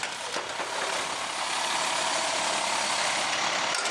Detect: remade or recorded recorded